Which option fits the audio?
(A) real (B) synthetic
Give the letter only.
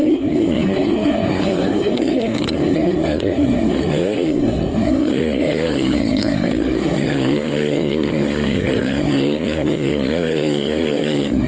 B